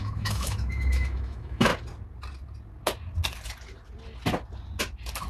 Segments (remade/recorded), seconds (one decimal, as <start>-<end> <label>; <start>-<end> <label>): 0.0-1.7 remade; 1.7-5.3 recorded